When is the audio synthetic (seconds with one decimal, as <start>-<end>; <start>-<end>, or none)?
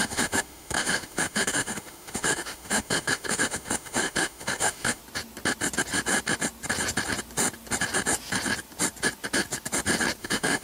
0.0-5.0; 10.2-10.6